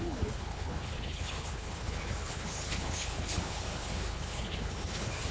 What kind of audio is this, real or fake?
fake